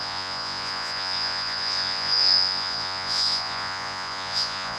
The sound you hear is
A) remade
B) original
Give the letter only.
A